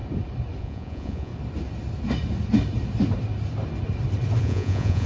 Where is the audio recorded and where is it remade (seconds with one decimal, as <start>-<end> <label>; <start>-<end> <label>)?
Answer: 0.0-0.6 recorded; 0.6-1.3 remade; 1.3-4.4 recorded; 4.4-5.1 remade